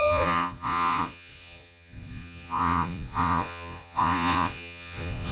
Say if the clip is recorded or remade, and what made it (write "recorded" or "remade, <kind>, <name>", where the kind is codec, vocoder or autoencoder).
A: remade, vocoder, Vocos